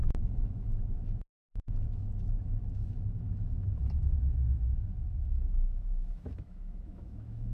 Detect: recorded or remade remade